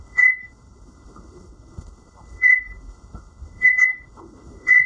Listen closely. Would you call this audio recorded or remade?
remade